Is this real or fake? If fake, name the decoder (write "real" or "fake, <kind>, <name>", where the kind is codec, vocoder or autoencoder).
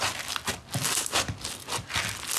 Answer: real